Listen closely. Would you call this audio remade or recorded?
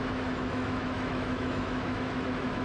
remade